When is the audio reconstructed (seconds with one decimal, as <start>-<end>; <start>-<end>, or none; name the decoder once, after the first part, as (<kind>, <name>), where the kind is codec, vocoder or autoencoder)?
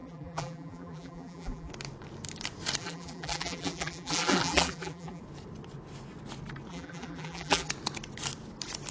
0.0-1.7 (vocoder, BigVGAN v2); 2.8-5.2; 6.7-7.7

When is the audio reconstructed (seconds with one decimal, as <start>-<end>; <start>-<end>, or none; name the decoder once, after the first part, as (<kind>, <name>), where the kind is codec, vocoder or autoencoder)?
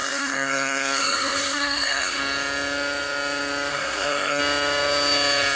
0.0-2.2 (codec, SNAC); 3.7-4.4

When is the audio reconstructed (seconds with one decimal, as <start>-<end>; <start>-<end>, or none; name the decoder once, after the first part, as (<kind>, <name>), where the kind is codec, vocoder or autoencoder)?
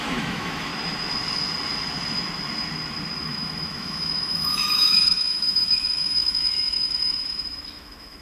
0.0-0.7 (autoencoder, DAC-VAE); 3.2-8.2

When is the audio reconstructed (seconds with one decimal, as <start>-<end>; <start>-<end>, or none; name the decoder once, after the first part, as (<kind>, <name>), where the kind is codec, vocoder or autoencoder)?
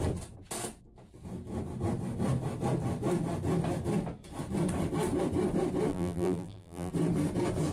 5.9-6.9 (vocoder, BigVGAN v2)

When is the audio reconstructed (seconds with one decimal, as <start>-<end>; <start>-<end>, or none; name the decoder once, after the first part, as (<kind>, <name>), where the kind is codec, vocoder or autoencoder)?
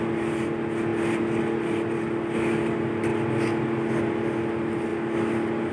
0.0-3.1 (vocoder, BigVGAN v2); 3.9-4.9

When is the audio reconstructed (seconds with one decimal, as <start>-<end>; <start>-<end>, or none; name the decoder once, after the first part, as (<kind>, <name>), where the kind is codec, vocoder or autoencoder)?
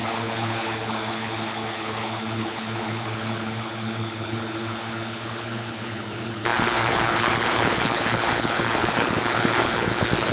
0.0-10.3 (codec, HILCodec)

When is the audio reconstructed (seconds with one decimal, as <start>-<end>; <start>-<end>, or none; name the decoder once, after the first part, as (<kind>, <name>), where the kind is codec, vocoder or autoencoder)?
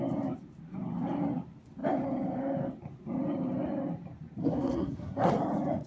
4.4-5.3 (codec, SNAC)